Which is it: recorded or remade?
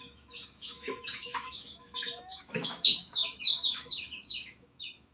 remade